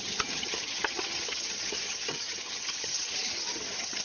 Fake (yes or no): yes